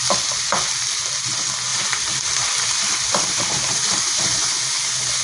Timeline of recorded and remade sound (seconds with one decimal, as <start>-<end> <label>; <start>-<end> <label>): 0.0-1.7 recorded; 1.7-4.8 remade; 4.8-5.2 recorded